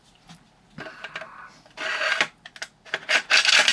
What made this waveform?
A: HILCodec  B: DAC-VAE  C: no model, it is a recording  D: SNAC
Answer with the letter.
C